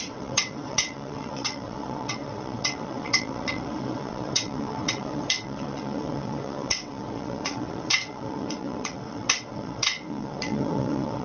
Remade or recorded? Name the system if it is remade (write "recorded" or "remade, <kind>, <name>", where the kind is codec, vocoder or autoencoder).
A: remade, vocoder, WaveNeXt